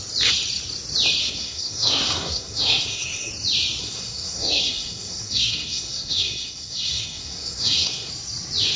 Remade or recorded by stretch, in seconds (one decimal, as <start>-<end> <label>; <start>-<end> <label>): 0.0-1.2 recorded; 1.2-3.3 remade; 3.3-3.8 recorded; 3.8-8.1 remade; 8.1-8.8 recorded

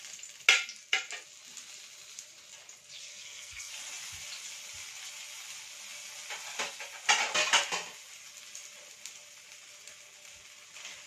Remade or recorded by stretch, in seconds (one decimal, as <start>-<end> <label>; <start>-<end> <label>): 0.0-3.1 recorded; 3.1-3.7 remade; 3.7-11.1 recorded

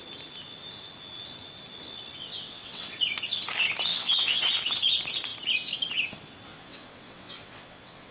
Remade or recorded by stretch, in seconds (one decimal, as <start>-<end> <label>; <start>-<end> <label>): 0.0-2.2 recorded; 2.2-2.9 remade; 2.9-3.9 recorded; 3.9-4.4 remade; 4.4-6.5 recorded; 6.5-8.1 remade

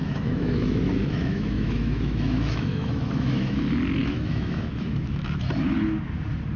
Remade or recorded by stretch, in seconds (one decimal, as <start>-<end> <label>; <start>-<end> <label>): 0.0-3.6 remade; 3.6-4.0 recorded; 4.0-5.5 remade; 5.5-6.6 recorded

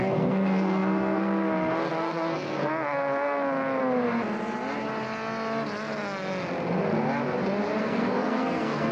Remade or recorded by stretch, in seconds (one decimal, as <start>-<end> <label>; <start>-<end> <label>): 0.0-3.8 remade; 3.8-7.8 recorded; 7.8-8.9 remade

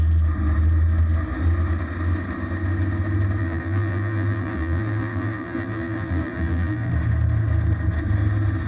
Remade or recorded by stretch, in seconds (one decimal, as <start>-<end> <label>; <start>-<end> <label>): 0.0-3.4 recorded; 3.4-6.9 remade; 6.9-8.7 recorded

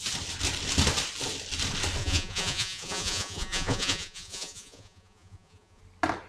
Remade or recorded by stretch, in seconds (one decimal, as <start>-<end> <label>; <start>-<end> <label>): 0.0-2.0 recorded; 2.0-5.8 remade; 5.8-6.3 recorded

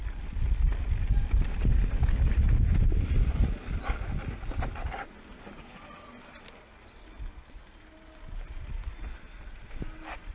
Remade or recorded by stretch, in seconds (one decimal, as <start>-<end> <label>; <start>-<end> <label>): 0.0-10.3 recorded